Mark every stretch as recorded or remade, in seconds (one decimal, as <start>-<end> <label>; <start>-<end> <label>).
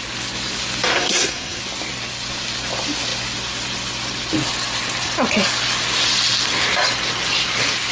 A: 0.0-0.9 recorded; 0.9-1.6 remade; 1.6-7.9 recorded